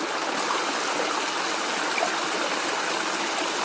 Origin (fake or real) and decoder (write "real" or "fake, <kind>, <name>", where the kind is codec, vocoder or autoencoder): real